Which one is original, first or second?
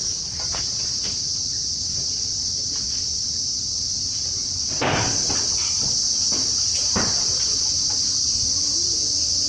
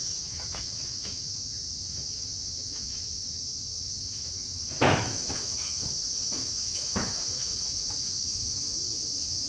first